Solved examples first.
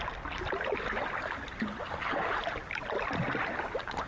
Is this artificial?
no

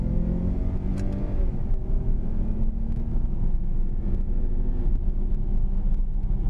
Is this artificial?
no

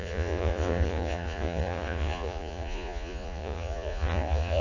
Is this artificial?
yes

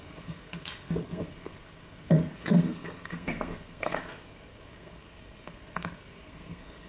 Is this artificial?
yes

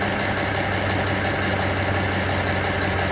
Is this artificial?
no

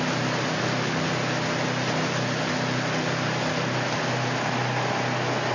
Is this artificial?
no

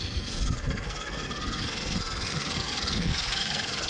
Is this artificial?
yes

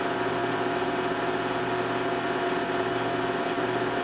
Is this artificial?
no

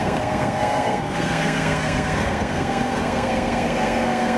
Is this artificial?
yes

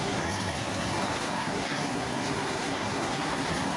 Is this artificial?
yes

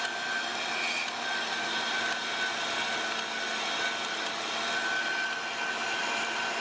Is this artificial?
no